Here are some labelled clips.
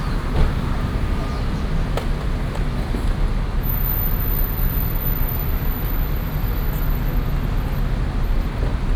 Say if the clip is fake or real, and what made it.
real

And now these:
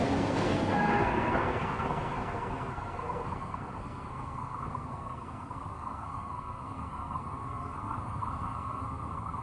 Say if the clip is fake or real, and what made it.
fake, codec, SNAC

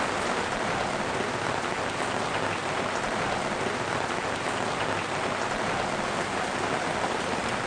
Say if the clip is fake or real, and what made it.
real